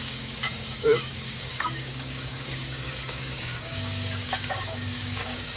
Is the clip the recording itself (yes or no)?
no